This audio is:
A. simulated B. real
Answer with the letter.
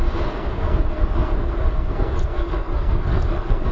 A